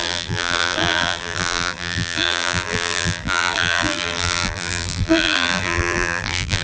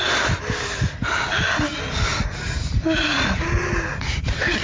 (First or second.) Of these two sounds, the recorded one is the second